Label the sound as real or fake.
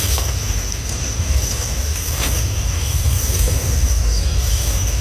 fake